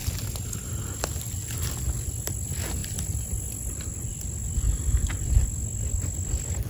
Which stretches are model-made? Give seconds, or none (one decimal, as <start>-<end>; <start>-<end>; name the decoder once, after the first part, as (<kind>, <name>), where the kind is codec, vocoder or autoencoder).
none